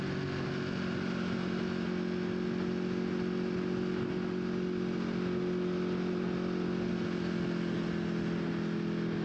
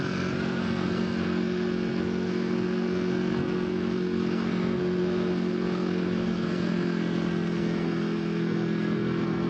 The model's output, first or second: second